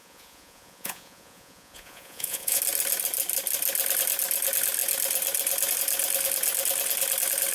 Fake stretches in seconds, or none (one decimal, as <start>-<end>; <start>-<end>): 0.0-2.6